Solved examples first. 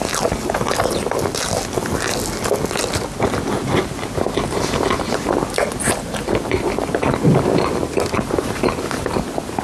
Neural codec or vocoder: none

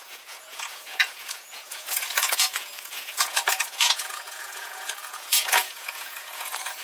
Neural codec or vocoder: vocoder, Vocos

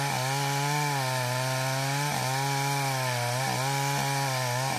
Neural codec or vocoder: none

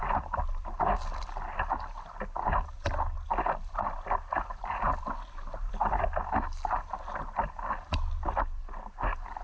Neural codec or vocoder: none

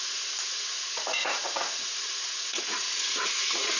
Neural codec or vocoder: vocoder, Vocos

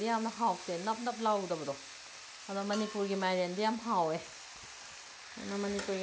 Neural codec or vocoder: none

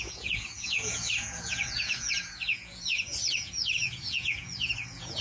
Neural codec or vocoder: vocoder, Vocos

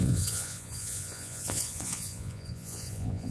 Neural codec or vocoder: vocoder, Vocos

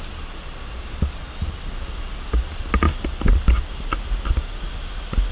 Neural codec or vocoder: none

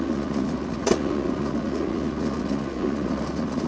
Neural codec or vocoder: vocoder, Vocos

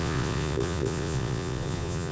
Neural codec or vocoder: vocoder, Vocos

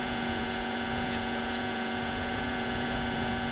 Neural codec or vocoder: vocoder, Vocos